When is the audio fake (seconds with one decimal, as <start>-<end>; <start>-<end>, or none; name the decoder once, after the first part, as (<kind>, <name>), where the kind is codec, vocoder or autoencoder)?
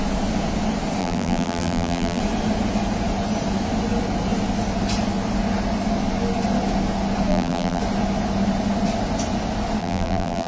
1.0-2.2 (vocoder, BigVGAN v2); 7.3-7.8; 9.8-10.5